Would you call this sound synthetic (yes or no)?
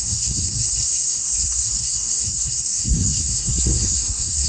yes